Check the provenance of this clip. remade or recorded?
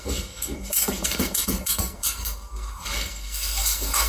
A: remade